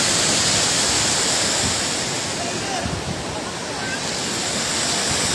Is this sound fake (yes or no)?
no